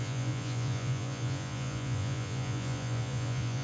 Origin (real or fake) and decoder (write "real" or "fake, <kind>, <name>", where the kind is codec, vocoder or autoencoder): fake, vocoder, Vocos